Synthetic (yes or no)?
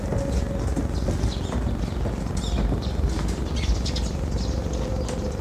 no